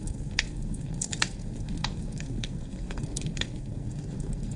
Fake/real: fake